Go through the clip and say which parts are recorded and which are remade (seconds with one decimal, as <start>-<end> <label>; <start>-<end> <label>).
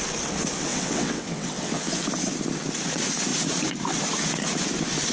0.0-0.7 recorded; 0.7-2.0 remade; 2.0-5.1 recorded